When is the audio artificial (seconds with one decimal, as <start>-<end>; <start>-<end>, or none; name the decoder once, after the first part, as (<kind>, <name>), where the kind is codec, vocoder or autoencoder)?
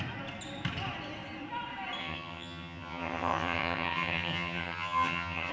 2.0-5.5 (vocoder, HiFi-GAN)